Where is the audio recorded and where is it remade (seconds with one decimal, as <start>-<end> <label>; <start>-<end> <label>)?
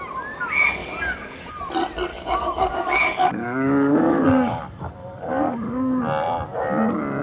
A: 0.0-0.8 recorded; 0.8-1.6 remade; 1.6-2.1 recorded; 2.1-6.0 remade; 6.0-7.2 recorded